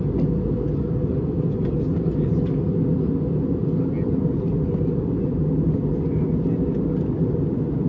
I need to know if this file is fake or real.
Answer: real